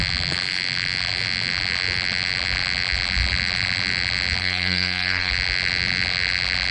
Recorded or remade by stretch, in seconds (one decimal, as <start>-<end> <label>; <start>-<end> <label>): 0.0-4.4 recorded; 4.4-5.3 remade; 5.3-6.7 recorded